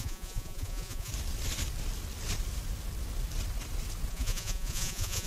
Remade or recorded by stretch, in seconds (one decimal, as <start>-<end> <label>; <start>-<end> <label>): 0.0-1.1 remade; 1.1-4.1 recorded; 4.1-5.3 remade